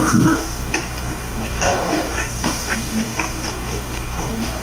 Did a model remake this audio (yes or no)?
yes